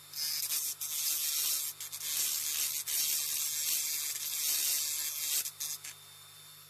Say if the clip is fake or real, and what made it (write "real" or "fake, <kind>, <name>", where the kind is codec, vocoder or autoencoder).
real